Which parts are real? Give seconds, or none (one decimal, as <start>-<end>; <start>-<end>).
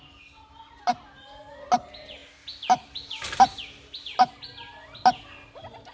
0.0-5.9